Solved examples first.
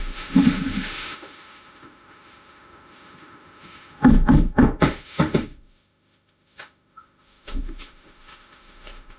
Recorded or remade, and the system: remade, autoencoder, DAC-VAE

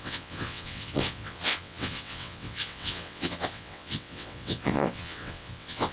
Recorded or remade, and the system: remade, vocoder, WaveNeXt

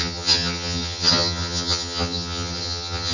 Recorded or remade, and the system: remade, vocoder, HiFi-GAN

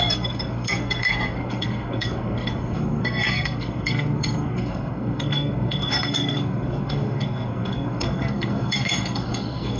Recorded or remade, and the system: remade, codec, SNAC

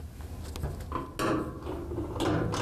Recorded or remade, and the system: recorded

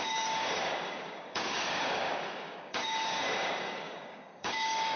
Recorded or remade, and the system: remade, codec, DAC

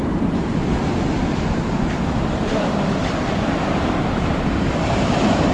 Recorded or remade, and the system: remade, vocoder, BigVGAN v2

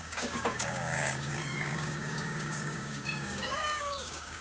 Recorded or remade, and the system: remade, codec, DAC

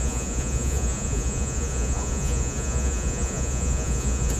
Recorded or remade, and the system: remade, vocoder, Vocos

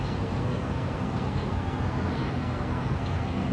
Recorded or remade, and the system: remade, codec, SNAC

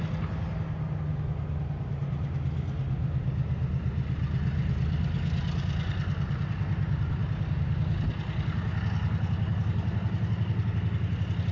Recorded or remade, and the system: recorded